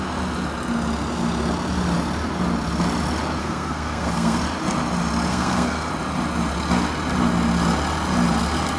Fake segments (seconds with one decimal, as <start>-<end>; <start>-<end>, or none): 3.4-4.4; 5.3-5.9

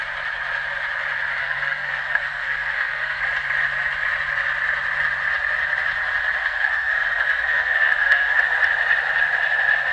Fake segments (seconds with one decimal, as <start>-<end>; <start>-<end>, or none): 1.4-3.2; 6.4-8.4

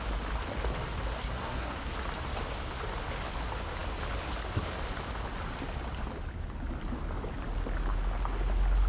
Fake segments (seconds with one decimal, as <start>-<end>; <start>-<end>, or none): 1.2-1.9